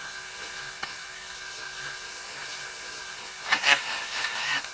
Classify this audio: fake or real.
fake